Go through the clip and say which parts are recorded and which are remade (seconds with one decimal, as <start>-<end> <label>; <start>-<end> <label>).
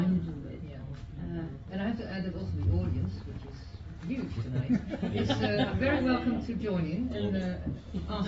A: 0.0-8.3 recorded